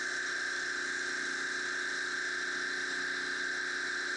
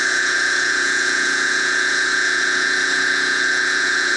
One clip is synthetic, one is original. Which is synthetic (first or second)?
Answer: second